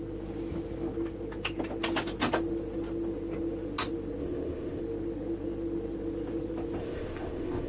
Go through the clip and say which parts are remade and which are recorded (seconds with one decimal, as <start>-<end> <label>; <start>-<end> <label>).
0.0-4.2 recorded; 4.2-4.8 remade; 4.8-6.8 recorded; 6.8-7.7 remade